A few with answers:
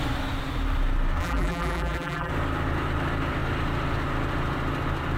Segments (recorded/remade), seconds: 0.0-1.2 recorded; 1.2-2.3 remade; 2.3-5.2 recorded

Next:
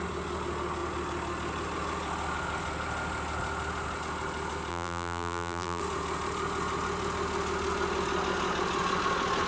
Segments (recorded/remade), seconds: 0.0-4.7 recorded; 4.7-5.8 remade; 5.8-9.5 recorded

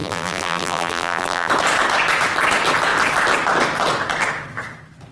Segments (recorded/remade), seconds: 0.0-1.5 remade; 1.5-5.1 recorded

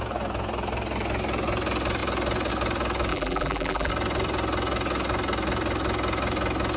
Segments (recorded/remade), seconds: 0.0-3.1 recorded; 3.1-3.9 remade; 3.9-6.8 recorded

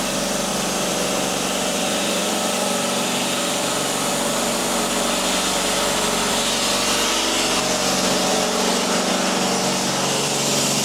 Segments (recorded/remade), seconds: 0.0-0.5 recorded; 0.5-4.1 remade; 4.1-8.3 recorded; 8.3-9.1 remade; 9.1-10.8 recorded

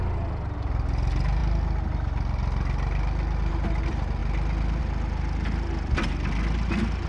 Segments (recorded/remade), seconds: 0.0-7.1 recorded